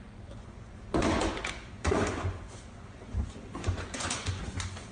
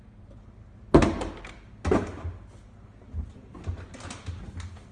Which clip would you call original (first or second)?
second